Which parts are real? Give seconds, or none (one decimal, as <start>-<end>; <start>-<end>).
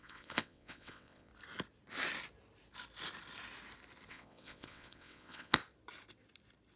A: 1.3-4.1; 5.6-6.8